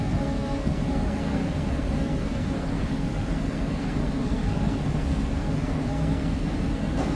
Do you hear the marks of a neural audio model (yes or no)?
yes